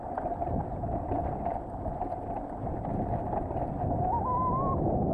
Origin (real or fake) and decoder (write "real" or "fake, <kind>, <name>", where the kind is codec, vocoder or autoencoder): real